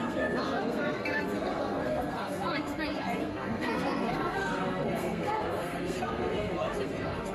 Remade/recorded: remade